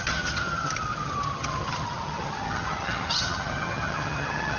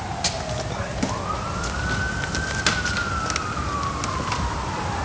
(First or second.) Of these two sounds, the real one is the second